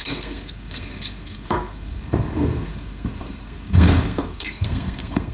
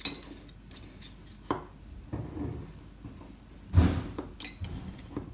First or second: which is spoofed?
first